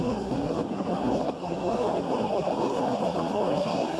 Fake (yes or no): yes